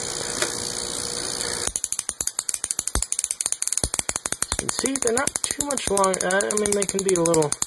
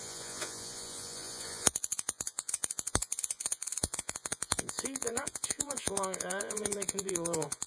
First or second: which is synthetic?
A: second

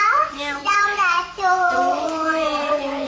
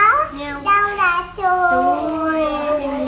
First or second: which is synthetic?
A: first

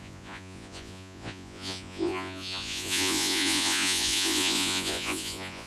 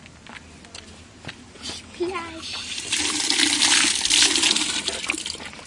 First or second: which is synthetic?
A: first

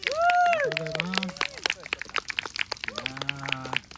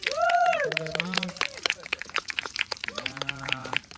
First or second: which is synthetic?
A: second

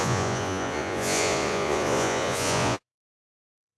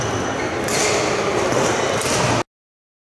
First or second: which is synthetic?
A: first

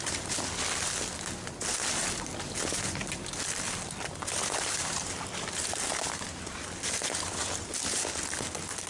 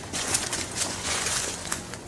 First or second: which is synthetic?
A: second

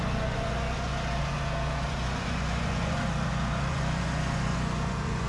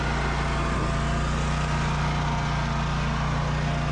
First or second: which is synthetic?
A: first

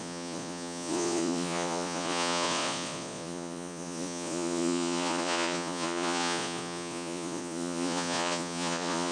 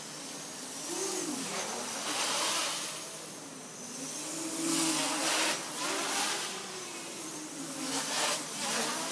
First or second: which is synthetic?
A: first